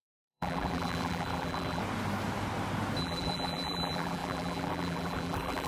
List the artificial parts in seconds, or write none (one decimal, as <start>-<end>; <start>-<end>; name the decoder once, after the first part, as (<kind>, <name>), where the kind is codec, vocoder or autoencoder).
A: 0.0-1.8 (vocoder, BigVGAN v2); 3.0-5.7